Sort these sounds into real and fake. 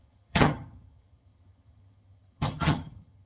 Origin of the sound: fake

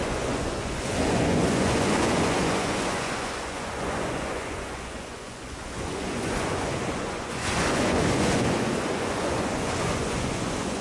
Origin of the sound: fake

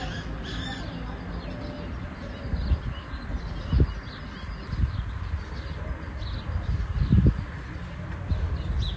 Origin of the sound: real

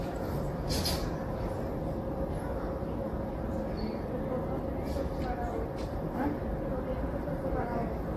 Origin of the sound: real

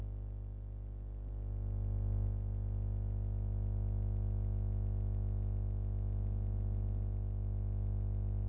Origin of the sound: real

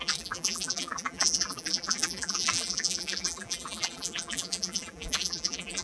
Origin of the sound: fake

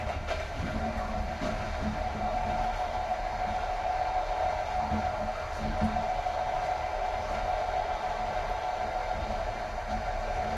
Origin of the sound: real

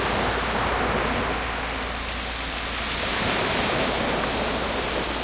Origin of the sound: real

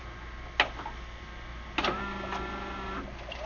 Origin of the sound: real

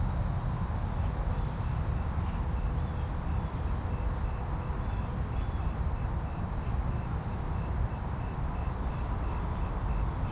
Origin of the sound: real